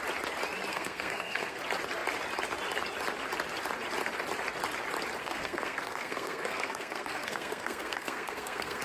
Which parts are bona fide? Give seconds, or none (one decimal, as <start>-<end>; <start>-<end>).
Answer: 0.0-0.7; 1.6-5.2